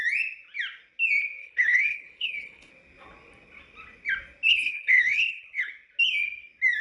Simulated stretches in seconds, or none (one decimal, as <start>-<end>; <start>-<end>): 1.4-2.7; 4.5-5.7